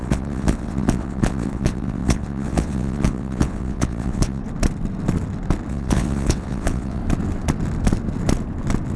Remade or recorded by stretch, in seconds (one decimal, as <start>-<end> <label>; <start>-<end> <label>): 0.0-4.4 remade; 4.4-5.7 recorded; 5.7-7.0 remade; 7.0-9.0 recorded